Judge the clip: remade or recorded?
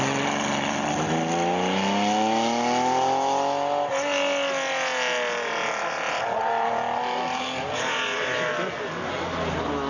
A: recorded